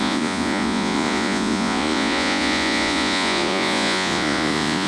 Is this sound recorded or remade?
remade